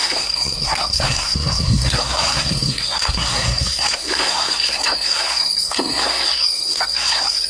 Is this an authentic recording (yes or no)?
no